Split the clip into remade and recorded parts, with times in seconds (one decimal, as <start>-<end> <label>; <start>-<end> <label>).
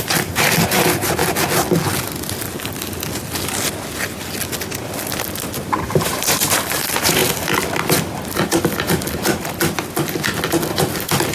0.0-1.2 remade; 1.2-5.5 recorded; 5.5-7.2 remade; 7.2-11.3 recorded